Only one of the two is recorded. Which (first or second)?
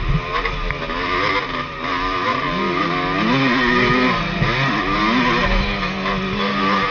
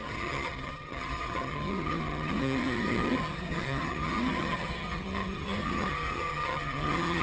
first